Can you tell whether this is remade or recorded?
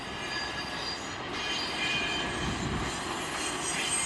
recorded